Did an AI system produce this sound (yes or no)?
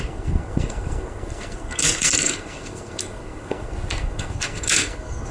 yes